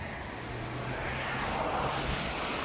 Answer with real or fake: real